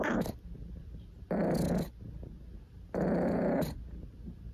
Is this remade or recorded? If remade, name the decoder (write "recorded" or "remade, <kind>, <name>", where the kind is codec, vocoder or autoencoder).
recorded